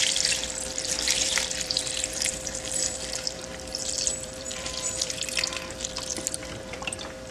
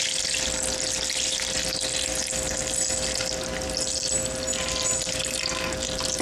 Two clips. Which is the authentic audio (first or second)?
second